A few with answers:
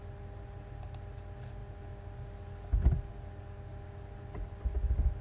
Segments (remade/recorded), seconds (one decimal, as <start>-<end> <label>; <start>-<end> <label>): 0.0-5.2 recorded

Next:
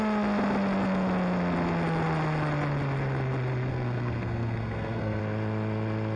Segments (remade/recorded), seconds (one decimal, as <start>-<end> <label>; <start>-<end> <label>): 0.0-3.7 recorded; 3.7-5.2 remade; 5.2-6.2 recorded

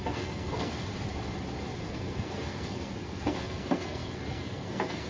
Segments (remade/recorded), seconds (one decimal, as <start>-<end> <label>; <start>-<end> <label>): 0.0-0.7 remade; 0.7-1.8 recorded; 1.8-5.1 remade

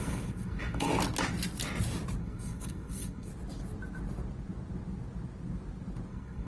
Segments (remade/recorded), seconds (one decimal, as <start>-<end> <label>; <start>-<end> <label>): 0.0-0.9 remade; 0.9-2.2 recorded; 2.2-3.3 remade; 3.3-6.1 recorded; 6.1-6.5 remade

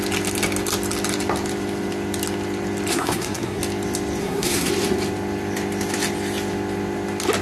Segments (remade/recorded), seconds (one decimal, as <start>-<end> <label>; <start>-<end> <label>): 0.0-2.9 recorded; 2.9-3.6 remade; 3.6-4.2 recorded; 4.2-4.7 remade; 4.7-7.4 recorded

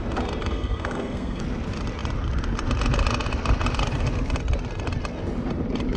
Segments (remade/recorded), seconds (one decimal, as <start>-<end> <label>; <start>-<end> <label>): 0.0-0.4 recorded; 0.4-1.4 remade; 1.4-6.0 recorded